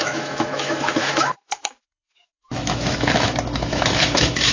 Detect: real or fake fake